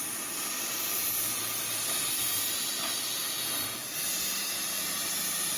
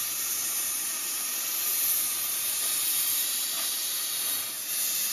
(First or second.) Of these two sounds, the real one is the first